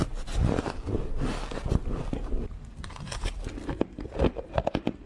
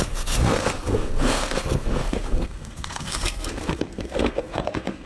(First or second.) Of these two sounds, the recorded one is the first